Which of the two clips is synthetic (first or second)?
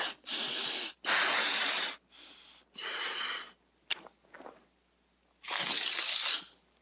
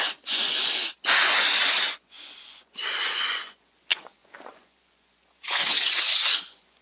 second